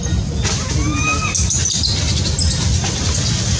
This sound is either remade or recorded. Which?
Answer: recorded